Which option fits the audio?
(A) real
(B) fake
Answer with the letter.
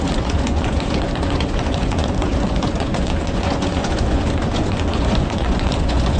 B